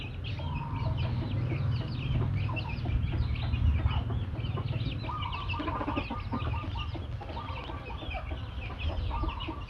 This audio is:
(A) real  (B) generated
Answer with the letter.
A